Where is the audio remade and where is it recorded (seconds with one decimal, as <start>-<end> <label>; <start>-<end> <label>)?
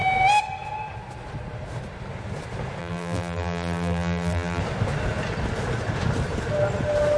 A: 0.0-2.8 recorded; 2.8-4.6 remade; 4.6-7.2 recorded